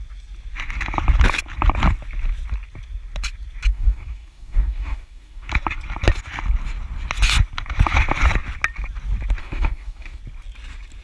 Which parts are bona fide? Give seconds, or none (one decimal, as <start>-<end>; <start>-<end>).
0.0-3.7; 5.5-9.4; 10.2-11.0